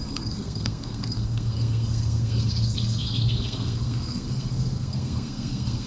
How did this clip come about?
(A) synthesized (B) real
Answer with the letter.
A